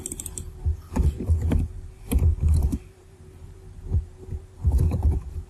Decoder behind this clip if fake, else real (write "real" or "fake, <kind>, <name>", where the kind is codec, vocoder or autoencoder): fake, vocoder, BigVGAN v2